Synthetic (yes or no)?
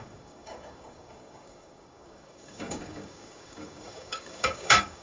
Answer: yes